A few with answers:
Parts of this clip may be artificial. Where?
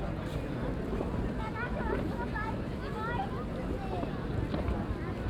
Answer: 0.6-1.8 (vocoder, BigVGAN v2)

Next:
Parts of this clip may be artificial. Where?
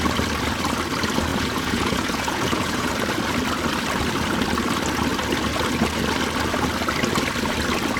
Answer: 1.3-2.9 (vocoder, Vocos)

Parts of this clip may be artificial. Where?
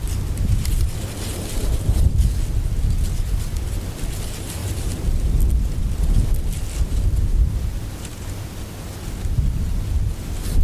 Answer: 4.6-5.4 (vocoder, BigVGAN v2)